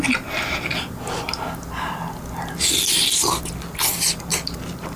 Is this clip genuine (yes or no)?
yes